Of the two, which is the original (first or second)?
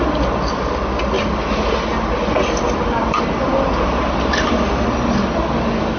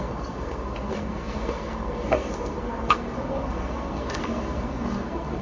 first